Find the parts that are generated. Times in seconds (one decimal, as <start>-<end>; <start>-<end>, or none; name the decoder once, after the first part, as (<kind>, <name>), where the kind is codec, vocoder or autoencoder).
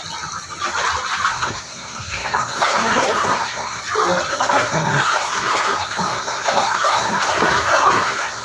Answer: 1.3-3.8 (codec, SNAC); 4.3-8.4